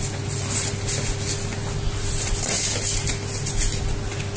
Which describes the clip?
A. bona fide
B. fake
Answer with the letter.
A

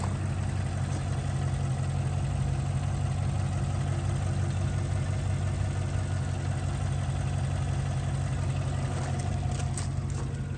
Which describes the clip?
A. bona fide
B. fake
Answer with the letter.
A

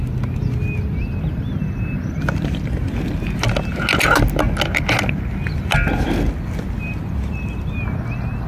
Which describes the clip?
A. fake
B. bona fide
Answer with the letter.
B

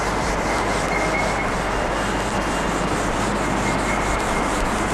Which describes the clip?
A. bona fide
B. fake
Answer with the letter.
A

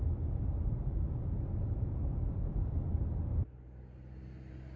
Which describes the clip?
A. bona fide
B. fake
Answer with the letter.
A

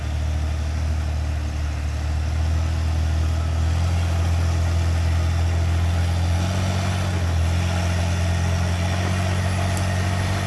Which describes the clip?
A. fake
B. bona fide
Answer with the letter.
B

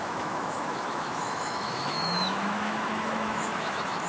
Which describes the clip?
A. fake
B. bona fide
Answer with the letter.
A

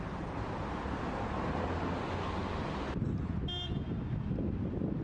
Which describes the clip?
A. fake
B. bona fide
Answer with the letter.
B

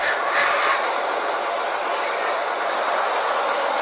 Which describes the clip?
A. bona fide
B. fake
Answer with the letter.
A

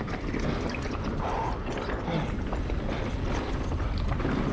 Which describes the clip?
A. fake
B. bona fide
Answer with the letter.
B